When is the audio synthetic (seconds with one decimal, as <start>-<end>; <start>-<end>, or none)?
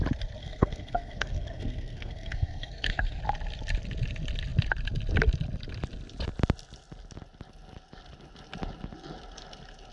0.4-3.2